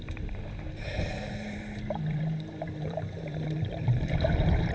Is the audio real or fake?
fake